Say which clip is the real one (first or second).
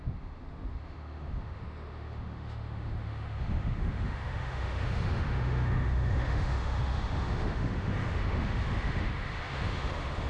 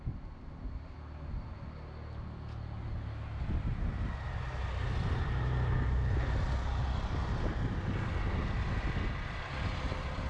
second